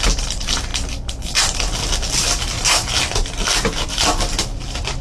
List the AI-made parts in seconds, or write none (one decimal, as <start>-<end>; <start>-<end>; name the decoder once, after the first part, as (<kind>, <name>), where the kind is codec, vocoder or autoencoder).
none